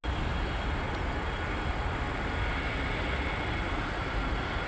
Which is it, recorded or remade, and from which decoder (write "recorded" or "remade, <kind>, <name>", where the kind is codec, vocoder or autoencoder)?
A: recorded